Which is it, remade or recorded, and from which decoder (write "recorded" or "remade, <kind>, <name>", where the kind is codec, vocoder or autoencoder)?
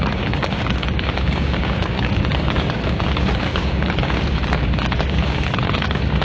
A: remade, codec, DAC